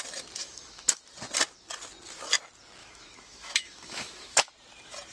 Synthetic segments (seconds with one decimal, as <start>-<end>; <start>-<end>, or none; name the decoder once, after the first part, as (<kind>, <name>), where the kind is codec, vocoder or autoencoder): 0.4-1.0 (autoencoder, DAC-VAE); 2.8-4.5